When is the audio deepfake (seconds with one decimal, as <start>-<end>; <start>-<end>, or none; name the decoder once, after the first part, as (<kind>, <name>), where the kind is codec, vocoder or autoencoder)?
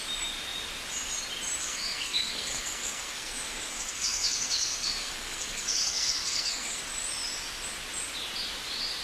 1.6-6.8 (codec, SNAC)